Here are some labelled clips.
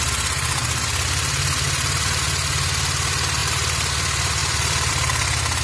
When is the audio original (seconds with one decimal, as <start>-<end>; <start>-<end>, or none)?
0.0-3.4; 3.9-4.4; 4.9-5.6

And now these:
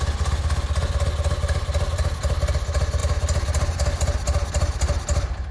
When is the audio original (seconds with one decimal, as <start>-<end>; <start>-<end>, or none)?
0.0-5.5

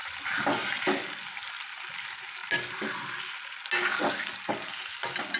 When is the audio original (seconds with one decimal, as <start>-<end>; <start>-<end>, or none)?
0.0-5.4

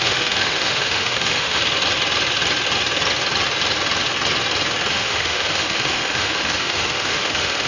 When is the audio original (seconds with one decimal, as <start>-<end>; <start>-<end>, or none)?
1.6-4.9

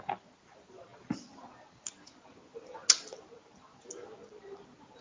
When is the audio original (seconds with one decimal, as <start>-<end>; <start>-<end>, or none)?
0.0-5.0

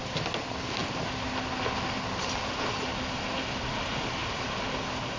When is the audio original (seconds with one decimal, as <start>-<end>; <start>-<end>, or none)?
0.0-5.2

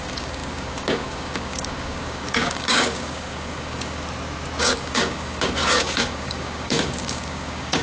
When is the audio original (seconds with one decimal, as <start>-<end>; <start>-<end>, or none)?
4.0-4.6